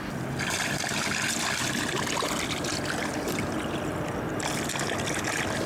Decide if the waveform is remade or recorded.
recorded